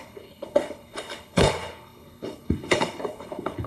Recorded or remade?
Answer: remade